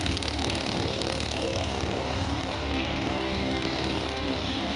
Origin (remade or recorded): remade